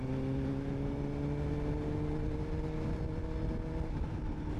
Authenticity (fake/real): real